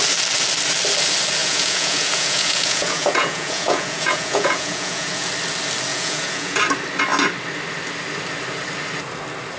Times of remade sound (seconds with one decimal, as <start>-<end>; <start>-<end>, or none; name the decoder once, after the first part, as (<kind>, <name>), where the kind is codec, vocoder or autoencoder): 1.4-5.3 (vocoder, Vocos); 5.9-6.6